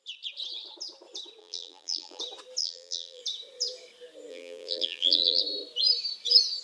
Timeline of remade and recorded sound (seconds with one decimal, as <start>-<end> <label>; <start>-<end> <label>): 0.0-1.4 recorded; 1.4-2.2 remade; 2.2-2.6 recorded; 2.6-3.2 remade; 3.2-4.3 recorded; 4.3-5.4 remade; 5.4-6.6 recorded